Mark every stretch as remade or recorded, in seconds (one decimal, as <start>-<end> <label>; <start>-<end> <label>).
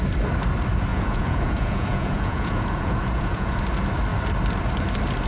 0.0-0.9 recorded; 0.9-3.6 remade; 3.6-5.3 recorded